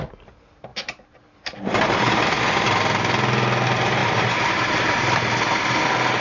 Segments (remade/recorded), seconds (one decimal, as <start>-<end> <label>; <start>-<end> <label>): 0.0-0.7 recorded; 0.7-2.4 remade; 2.4-4.0 recorded; 4.0-5.8 remade; 5.8-6.2 recorded

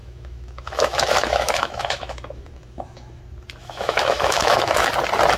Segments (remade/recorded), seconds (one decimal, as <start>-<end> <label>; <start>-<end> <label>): 0.0-3.2 remade; 3.2-3.6 recorded; 3.6-4.9 remade; 4.9-5.4 recorded